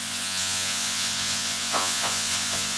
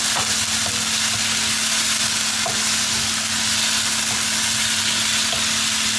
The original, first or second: second